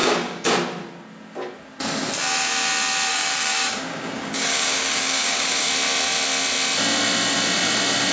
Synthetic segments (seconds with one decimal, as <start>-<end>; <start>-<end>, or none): 0.0-0.5; 3.1-5.7